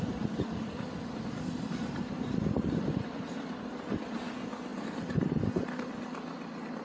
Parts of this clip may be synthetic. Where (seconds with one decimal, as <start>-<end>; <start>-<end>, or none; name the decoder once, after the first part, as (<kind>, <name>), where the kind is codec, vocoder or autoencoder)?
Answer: none

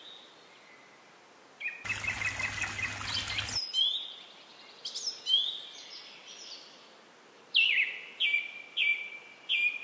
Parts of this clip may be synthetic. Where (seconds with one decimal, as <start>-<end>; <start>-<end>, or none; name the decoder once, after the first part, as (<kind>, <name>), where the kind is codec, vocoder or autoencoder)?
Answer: none

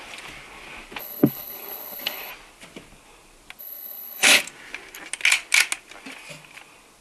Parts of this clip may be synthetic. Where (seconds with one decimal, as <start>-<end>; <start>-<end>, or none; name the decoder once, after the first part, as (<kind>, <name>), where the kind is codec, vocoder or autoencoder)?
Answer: 1.0-2.3 (codec, HILCodec); 3.6-4.4